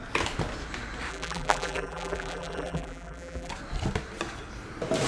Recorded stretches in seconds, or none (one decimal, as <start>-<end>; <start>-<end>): 0.0-1.1; 3.5-5.1